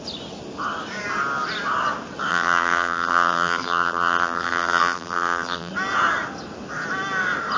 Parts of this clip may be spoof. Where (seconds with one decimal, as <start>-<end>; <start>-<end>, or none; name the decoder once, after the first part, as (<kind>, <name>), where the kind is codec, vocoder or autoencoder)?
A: 2.3-5.7 (vocoder, BigVGAN v2)